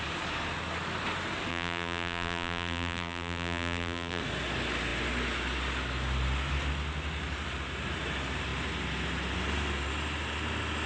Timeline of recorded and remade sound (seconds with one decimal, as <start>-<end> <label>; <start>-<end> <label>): 0.0-1.5 recorded; 1.5-4.2 remade; 4.2-10.9 recorded